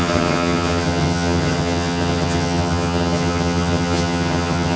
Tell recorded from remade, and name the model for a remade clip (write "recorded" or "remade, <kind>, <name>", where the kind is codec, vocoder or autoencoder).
remade, vocoder, HiFi-GAN